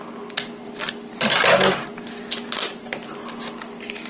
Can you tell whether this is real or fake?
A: real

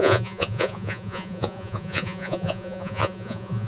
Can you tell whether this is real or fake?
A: fake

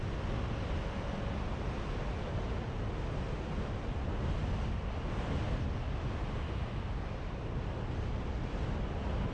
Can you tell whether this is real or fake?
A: real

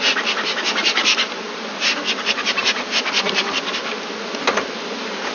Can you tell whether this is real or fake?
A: real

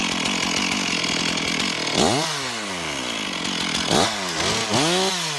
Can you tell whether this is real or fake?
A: real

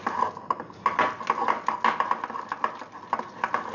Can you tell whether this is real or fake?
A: real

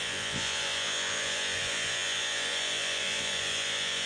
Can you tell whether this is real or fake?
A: fake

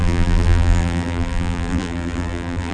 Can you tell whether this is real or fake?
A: fake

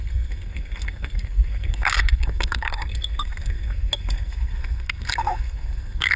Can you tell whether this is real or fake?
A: fake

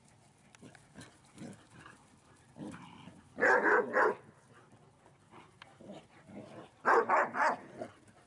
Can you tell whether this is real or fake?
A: real